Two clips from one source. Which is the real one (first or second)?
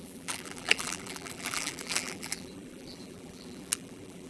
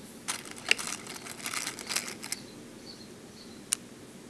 second